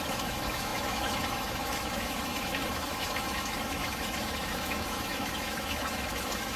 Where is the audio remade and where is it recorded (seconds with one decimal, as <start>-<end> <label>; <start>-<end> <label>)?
0.0-6.6 remade